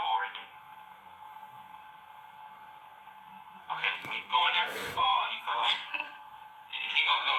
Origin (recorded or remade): remade